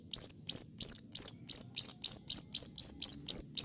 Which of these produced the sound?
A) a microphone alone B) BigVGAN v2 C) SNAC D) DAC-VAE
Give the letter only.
A